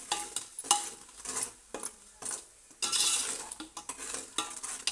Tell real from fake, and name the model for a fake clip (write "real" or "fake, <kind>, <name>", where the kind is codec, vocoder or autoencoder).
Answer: real